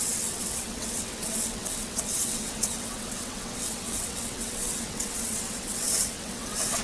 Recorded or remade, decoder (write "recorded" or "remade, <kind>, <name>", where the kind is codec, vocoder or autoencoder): remade, vocoder, WaveNeXt